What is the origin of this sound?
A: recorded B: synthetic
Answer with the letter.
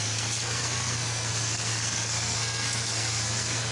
B